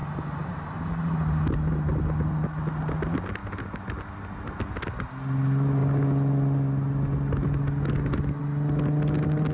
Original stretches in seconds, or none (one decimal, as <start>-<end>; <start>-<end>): 0.0-9.5